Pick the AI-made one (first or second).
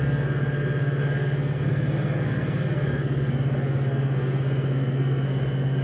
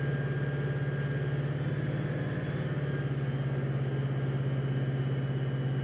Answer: first